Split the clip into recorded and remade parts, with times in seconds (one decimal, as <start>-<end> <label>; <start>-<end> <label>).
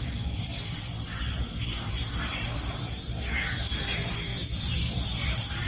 0.0-2.6 recorded; 2.6-3.2 remade; 3.2-4.3 recorded; 4.3-5.0 remade; 5.0-5.7 recorded